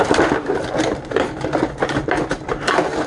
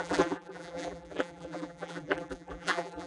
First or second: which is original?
first